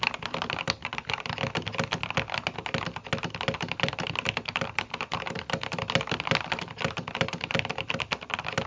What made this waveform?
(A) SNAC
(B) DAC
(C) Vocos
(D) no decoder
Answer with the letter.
D